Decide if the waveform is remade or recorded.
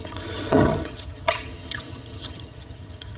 remade